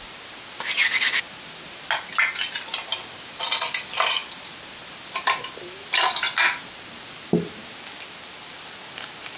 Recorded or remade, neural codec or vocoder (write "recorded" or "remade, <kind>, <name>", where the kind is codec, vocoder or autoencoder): recorded